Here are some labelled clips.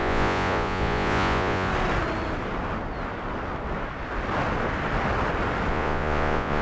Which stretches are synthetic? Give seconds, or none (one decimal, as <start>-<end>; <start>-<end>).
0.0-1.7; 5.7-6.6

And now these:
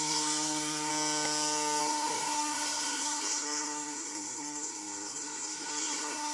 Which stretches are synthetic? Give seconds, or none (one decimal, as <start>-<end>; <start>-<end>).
0.0-0.9; 1.8-6.3

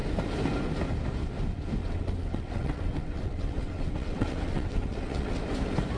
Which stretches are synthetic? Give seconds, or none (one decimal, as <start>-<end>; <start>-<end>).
1.8-5.4

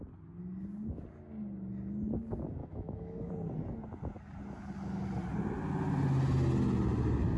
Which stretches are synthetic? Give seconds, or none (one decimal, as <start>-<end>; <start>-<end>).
2.6-3.3